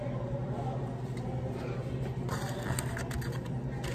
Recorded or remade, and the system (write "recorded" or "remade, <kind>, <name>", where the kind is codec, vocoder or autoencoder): recorded